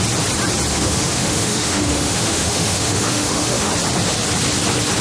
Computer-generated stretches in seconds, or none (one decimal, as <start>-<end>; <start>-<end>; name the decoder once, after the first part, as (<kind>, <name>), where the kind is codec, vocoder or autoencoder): 0.7-3.7 (autoencoder, DAC-VAE)